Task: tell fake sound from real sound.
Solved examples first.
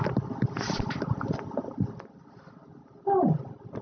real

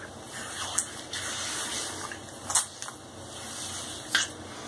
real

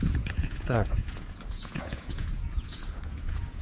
fake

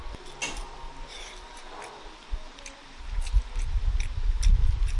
real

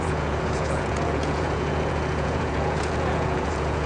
fake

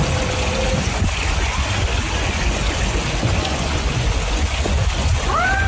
fake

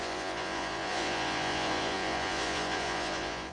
fake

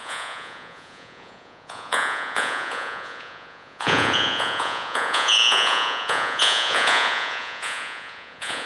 fake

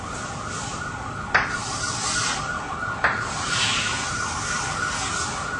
real